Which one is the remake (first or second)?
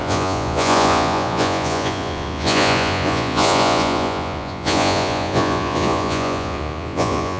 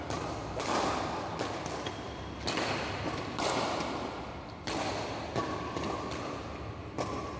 first